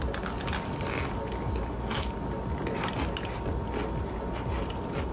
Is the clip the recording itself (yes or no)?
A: yes